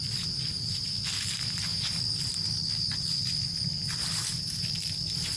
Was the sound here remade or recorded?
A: recorded